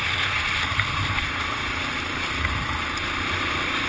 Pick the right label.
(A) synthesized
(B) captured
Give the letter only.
B